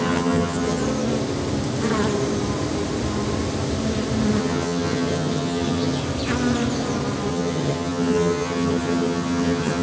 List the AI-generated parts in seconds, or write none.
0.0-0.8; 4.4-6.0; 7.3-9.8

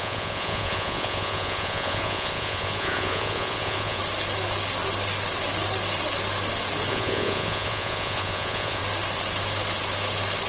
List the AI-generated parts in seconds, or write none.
0.0-4.0; 6.9-8.8

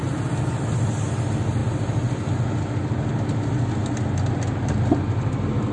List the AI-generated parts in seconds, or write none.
none

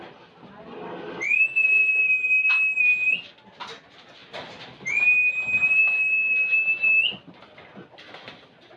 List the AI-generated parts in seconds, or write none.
2.0-2.5